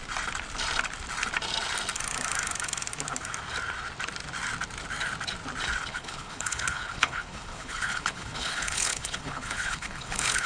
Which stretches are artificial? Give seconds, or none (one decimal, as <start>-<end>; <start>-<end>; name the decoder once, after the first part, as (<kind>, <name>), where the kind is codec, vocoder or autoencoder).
5.9-10.5 (codec, HILCodec)